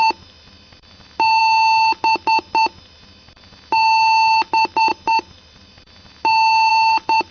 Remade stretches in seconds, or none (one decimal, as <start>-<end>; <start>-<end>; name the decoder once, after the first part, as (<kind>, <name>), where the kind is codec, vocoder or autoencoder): 4.9-5.7 (vocoder, BigVGAN v2); 6.7-7.3